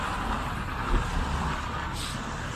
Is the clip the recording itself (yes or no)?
yes